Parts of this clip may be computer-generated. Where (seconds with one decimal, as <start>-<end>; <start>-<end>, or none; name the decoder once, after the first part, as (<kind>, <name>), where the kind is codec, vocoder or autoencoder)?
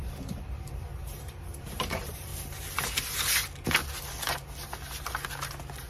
0.0-2.3 (vocoder, BigVGAN v2)